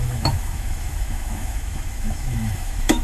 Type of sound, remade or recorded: remade